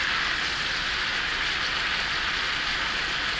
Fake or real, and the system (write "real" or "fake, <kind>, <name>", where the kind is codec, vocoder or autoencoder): real